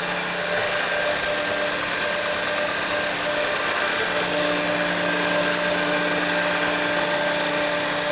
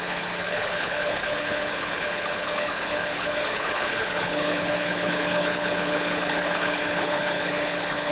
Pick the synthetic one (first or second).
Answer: second